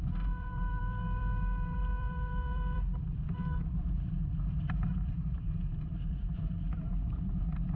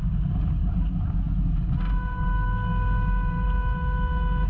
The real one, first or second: second